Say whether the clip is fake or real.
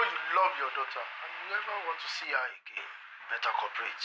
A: real